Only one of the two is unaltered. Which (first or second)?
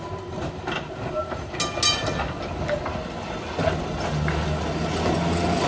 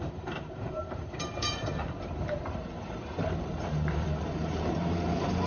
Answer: first